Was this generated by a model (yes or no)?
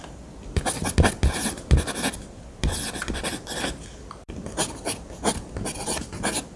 no